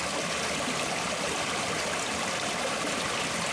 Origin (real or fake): real